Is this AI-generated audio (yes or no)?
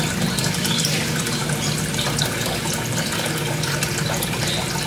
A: yes